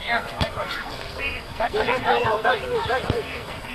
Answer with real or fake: fake